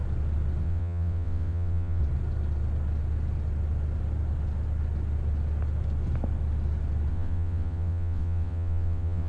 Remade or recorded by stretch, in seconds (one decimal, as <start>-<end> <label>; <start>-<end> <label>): 0.0-0.6 recorded; 0.6-2.0 remade; 2.0-7.1 recorded; 7.1-9.3 remade